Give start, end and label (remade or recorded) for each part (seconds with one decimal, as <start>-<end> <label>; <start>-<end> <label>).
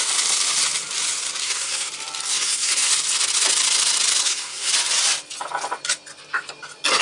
0.0-1.4 recorded; 1.4-1.9 remade; 1.9-2.3 recorded; 2.3-2.9 remade; 2.9-4.2 recorded; 4.2-4.7 remade; 4.7-7.0 recorded